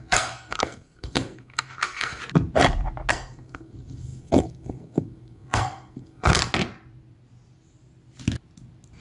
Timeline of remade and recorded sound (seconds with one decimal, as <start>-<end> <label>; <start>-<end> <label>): 0.0-2.2 remade; 2.2-3.1 recorded; 3.1-6.4 remade; 6.4-9.0 recorded